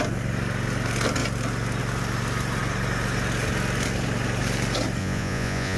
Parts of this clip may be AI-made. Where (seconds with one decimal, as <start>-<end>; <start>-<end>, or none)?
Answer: 5.0-5.8